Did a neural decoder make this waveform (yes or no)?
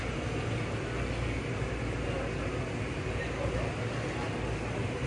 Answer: no